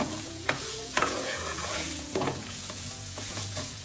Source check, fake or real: fake